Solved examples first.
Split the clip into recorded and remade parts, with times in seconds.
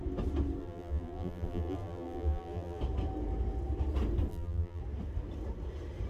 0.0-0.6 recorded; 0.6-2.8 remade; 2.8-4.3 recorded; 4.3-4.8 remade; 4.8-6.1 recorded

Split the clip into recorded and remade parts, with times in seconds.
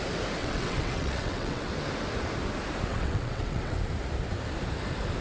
0.0-0.4 recorded; 0.4-1.7 remade; 1.7-2.9 recorded; 2.9-3.8 remade; 3.8-5.2 recorded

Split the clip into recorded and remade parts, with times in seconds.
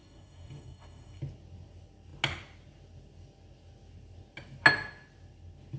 0.0-1.2 remade; 1.2-5.8 recorded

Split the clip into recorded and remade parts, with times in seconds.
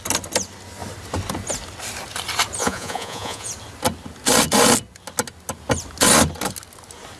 0.0-2.6 recorded; 2.6-3.5 remade; 3.5-7.2 recorded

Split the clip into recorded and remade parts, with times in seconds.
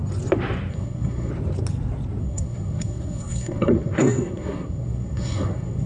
0.0-0.7 recorded; 0.7-1.3 remade; 1.3-2.2 recorded; 2.2-5.9 remade